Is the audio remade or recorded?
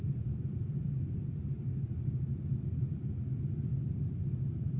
recorded